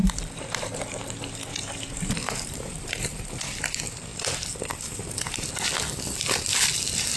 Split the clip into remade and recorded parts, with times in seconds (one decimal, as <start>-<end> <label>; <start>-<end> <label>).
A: 0.0-0.7 remade; 0.7-1.5 recorded; 1.5-3.2 remade; 3.2-4.1 recorded; 4.1-5.5 remade; 5.5-7.2 recorded